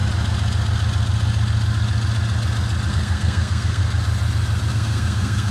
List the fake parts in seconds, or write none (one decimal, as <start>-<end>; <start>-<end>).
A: 2.9-3.8; 4.7-5.5